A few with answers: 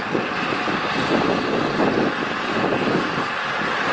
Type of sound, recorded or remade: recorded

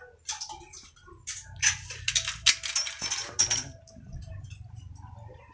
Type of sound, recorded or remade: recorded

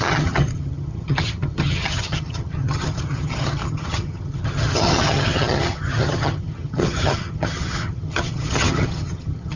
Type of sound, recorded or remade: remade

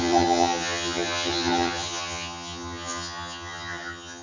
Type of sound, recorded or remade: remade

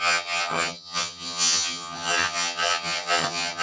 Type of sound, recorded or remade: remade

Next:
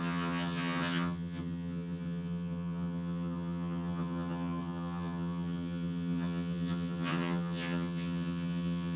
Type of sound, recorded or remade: remade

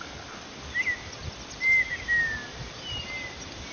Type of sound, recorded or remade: recorded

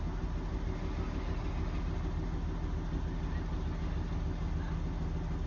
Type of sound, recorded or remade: recorded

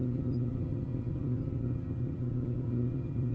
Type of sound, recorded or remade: remade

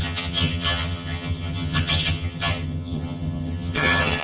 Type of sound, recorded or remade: remade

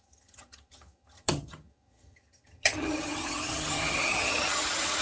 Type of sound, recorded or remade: remade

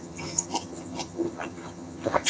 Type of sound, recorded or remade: remade